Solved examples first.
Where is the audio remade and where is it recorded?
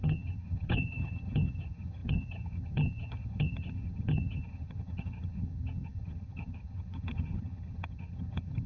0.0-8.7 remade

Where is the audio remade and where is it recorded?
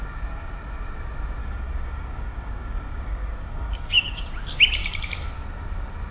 0.0-1.4 recorded; 1.4-4.2 remade; 4.2-4.8 recorded; 4.8-5.3 remade; 5.3-6.1 recorded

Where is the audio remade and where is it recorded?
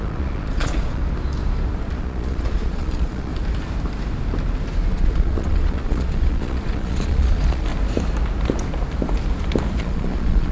0.0-1.0 remade; 1.0-2.0 recorded; 2.0-3.3 remade; 3.3-4.9 recorded; 4.9-7.7 remade; 7.7-9.8 recorded; 9.8-10.5 remade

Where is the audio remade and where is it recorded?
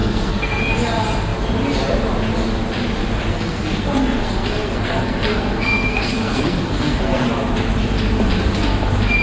0.0-0.6 remade; 0.6-3.3 recorded; 3.3-7.3 remade; 7.3-9.2 recorded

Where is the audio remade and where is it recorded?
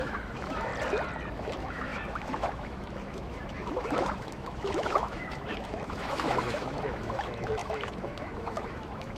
0.0-0.7 remade; 0.7-1.3 recorded; 1.3-9.2 remade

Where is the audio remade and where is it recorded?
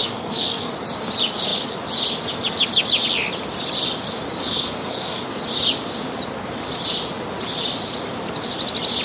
0.0-0.7 remade; 0.7-4.4 recorded; 4.4-5.4 remade; 5.4-9.0 recorded